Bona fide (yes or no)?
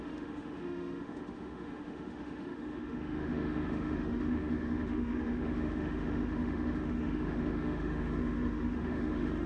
no